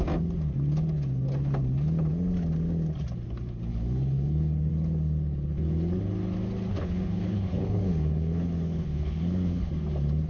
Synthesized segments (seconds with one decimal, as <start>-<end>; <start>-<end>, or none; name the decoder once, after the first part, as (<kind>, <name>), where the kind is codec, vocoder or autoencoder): 3.7-4.7 (codec, HILCodec); 5.5-6.0; 6.7-9.7